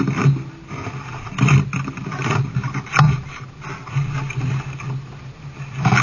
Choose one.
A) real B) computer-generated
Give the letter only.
A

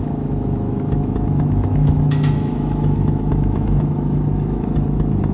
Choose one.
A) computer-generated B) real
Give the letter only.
A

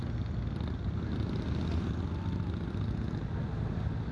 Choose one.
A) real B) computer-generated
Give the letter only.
A